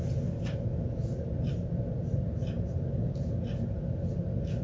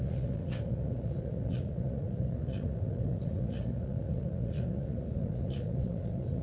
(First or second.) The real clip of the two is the first